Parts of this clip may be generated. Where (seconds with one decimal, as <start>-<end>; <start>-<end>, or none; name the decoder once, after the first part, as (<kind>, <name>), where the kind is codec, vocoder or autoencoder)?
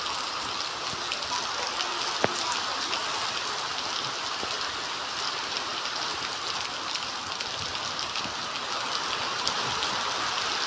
none